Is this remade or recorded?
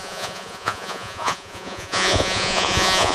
remade